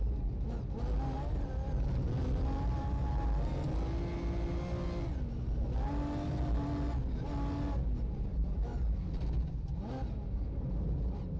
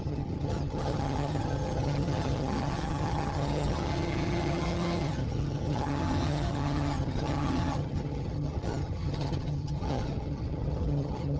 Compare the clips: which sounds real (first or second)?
first